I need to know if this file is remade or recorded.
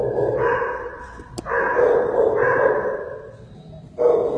recorded